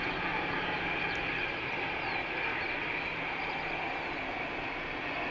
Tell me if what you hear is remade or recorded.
recorded